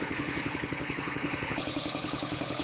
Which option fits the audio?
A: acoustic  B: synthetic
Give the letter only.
B